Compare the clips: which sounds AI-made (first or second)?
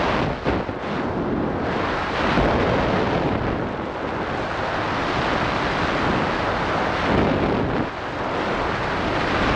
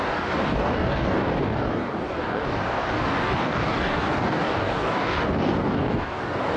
second